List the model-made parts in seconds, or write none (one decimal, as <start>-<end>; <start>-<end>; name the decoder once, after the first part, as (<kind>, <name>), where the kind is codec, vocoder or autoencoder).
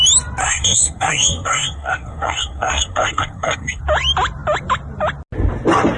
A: 0.4-3.8 (codec, SNAC)